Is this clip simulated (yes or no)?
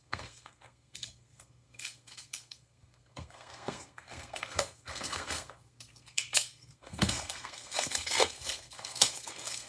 yes